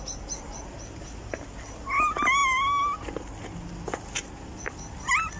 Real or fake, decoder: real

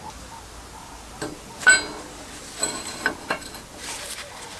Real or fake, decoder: real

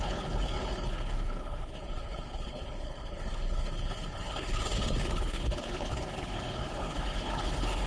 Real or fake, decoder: fake, codec, HILCodec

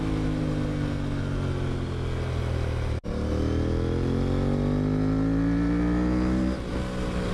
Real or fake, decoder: real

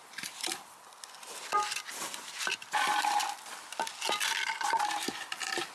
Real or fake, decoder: real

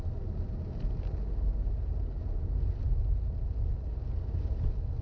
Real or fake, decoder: real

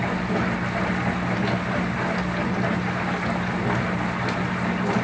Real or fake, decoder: real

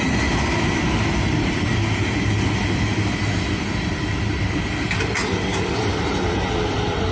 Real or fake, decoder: real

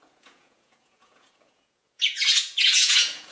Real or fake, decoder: fake, vocoder, Vocos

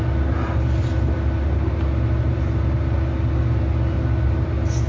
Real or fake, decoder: real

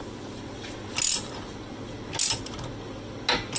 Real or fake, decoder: real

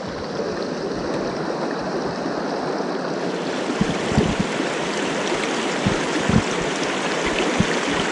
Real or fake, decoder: real